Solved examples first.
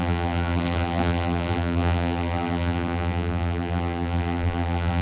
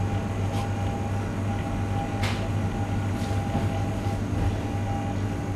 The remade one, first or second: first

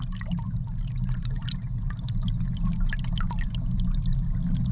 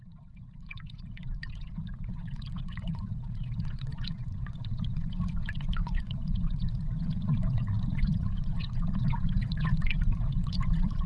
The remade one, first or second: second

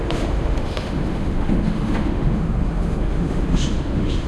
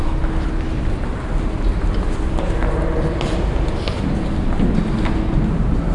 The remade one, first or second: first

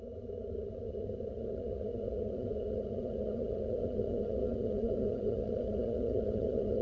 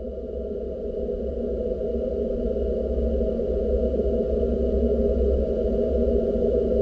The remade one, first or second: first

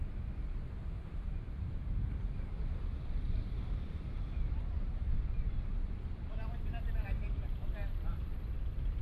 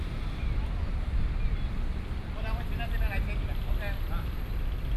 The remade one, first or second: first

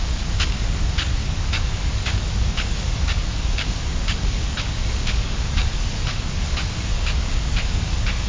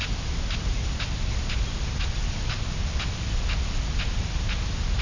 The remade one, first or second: first